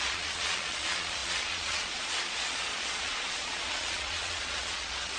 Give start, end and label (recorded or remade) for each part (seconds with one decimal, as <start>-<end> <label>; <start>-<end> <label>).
0.0-5.2 remade